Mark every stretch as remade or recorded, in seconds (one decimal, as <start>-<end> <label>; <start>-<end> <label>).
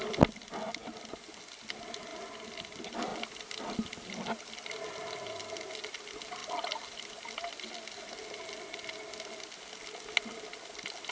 0.0-11.1 recorded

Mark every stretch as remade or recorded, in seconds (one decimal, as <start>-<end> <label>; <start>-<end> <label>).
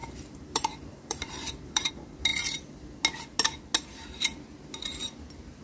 0.0-1.9 remade; 1.9-5.6 recorded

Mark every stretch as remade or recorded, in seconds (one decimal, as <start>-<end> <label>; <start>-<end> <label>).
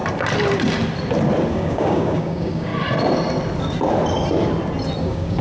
0.0-1.5 recorded; 1.5-2.7 remade; 2.7-5.0 recorded; 5.0-5.4 remade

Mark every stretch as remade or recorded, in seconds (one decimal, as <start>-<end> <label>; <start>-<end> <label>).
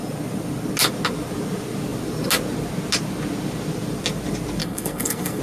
0.0-4.6 recorded; 4.6-5.4 remade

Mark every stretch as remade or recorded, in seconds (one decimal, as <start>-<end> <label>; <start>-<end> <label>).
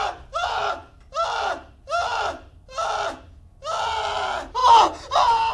0.0-4.6 recorded; 4.6-5.5 remade